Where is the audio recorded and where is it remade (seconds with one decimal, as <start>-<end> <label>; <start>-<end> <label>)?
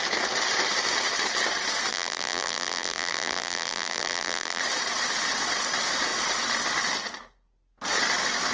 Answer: 0.0-1.9 recorded; 1.9-4.6 remade; 4.6-8.5 recorded